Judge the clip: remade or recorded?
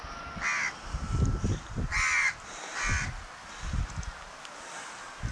recorded